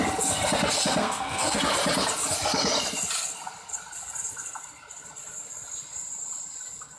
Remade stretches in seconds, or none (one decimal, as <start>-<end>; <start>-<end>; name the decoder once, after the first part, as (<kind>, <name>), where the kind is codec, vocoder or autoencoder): 1.0-1.6 (codec, SNAC)